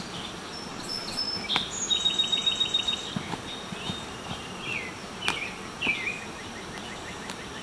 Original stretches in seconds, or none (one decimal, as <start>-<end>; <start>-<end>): 0.0-0.7; 1.2-7.6